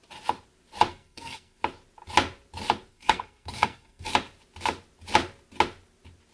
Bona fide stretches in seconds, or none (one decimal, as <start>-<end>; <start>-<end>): 0.0-0.9; 1.6-2.9; 4.1-6.3